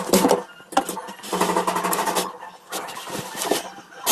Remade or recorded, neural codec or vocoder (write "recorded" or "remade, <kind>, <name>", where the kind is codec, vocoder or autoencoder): recorded